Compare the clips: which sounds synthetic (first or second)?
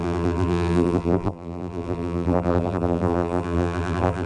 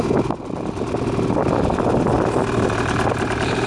first